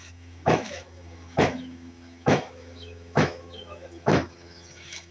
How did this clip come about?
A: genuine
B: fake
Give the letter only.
B